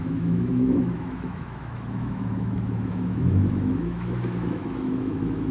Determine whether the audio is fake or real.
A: fake